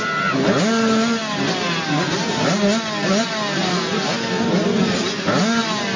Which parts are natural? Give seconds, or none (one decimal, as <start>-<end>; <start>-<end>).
0.0-6.0